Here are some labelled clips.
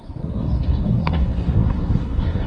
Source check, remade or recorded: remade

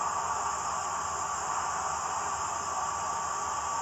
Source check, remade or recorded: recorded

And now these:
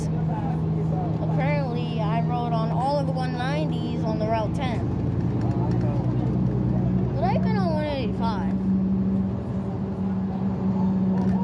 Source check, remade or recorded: recorded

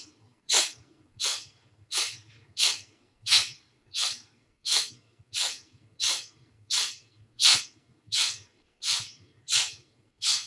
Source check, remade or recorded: remade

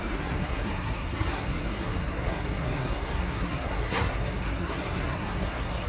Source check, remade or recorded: remade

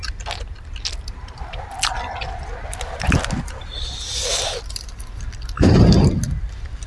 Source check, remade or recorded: recorded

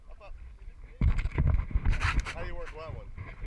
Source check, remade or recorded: recorded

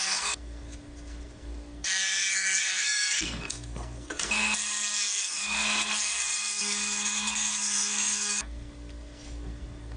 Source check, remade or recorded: remade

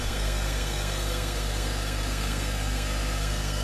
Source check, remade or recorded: remade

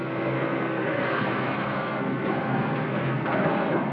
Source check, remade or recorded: remade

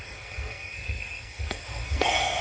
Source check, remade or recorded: remade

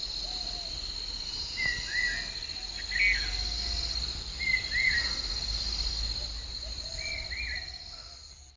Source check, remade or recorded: recorded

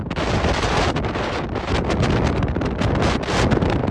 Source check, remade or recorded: recorded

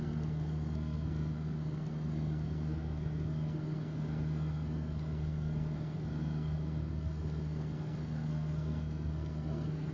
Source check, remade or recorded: remade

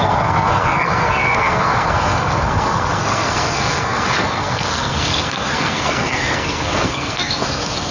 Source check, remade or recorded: remade